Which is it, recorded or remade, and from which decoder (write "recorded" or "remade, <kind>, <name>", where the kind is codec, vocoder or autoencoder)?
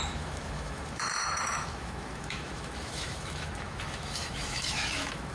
remade, autoencoder, DAC-VAE